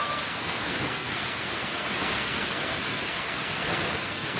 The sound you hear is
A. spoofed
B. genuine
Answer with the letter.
A